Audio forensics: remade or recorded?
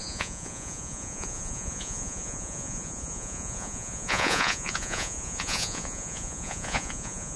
remade